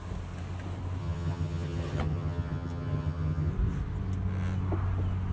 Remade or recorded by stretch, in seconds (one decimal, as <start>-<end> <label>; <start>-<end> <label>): 0.0-1.0 recorded; 1.0-3.5 remade; 3.5-5.3 recorded